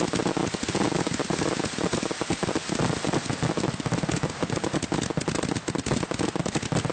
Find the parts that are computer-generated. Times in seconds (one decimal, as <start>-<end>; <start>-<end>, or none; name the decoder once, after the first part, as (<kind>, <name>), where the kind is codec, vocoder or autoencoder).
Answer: none